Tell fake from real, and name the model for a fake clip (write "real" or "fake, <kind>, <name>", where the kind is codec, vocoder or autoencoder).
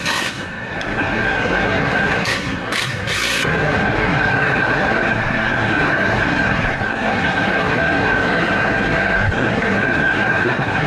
fake, codec, SNAC